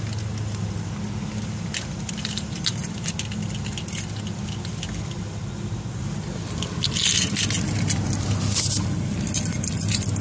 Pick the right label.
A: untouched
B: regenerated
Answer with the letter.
A